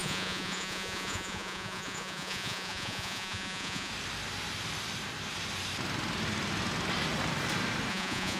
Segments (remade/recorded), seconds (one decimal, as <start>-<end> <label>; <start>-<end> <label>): 0.0-3.9 remade; 3.9-7.9 recorded; 7.9-8.4 remade

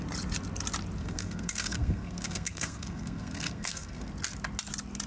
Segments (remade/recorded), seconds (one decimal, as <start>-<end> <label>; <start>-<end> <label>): 0.0-1.0 recorded; 1.0-4.1 remade; 4.1-5.1 recorded

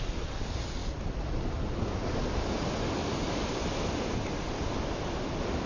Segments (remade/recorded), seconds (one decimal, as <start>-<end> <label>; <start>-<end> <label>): 0.0-5.7 recorded

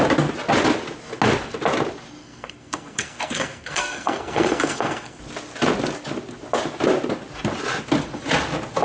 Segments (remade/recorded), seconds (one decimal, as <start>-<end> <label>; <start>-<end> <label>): 0.0-2.2 recorded; 2.2-5.2 remade; 5.2-8.8 recorded